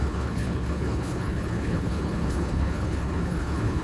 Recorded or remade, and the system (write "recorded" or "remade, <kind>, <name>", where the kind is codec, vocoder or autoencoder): remade, codec, HILCodec